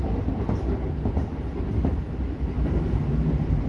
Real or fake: real